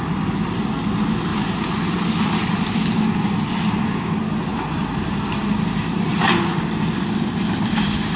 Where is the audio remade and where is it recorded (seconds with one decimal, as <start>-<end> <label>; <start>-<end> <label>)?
0.0-1.3 recorded; 1.3-1.8 remade; 1.8-4.5 recorded; 4.5-6.5 remade; 6.5-8.2 recorded